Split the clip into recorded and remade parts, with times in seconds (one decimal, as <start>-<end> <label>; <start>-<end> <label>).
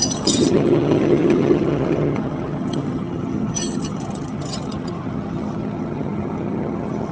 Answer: 0.0-7.1 remade